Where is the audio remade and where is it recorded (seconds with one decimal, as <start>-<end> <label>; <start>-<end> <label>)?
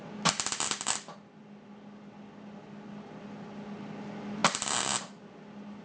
0.0-5.8 recorded